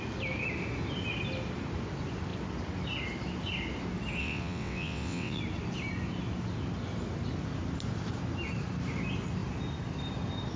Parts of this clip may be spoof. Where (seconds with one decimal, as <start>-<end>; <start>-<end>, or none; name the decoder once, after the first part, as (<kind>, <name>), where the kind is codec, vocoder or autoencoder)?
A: 4.2-5.4 (vocoder, WaveNeXt)